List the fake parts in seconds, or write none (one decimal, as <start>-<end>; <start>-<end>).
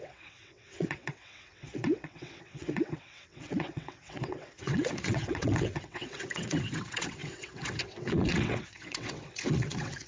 0.0-10.1